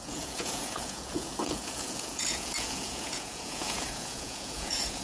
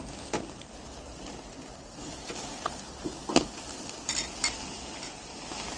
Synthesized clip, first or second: first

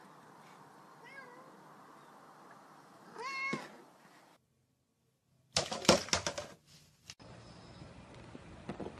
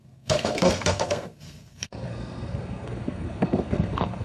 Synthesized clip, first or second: second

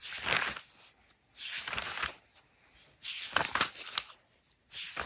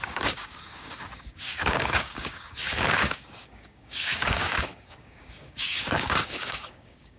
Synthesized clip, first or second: second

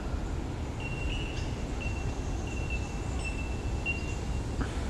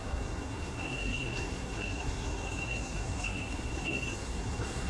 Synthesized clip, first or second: second